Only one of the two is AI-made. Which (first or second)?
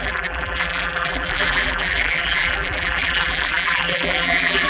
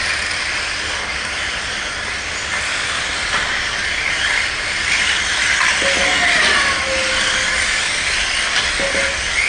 first